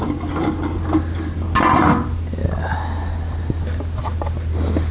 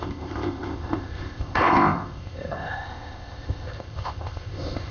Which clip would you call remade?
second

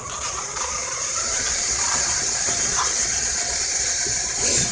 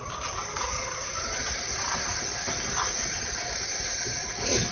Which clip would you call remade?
first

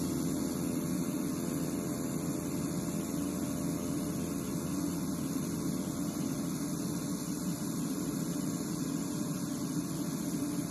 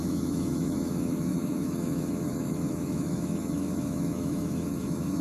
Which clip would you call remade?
second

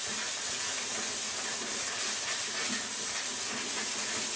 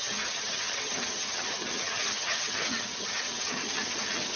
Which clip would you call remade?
second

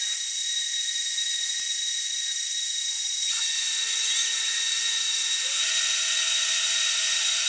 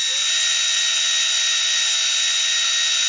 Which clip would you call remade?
first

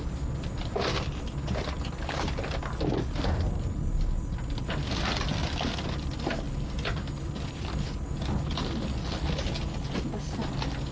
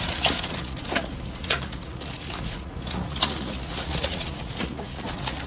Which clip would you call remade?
second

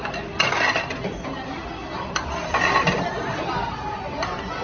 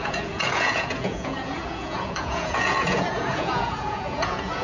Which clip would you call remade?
second